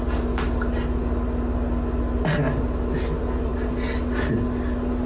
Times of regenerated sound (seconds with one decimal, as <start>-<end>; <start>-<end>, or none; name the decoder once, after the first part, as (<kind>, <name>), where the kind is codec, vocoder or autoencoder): none